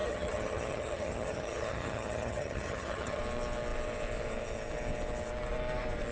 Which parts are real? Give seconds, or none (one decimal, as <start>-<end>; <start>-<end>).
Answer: 3.2-6.1